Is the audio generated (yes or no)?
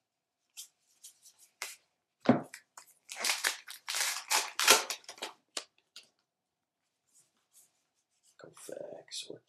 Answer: yes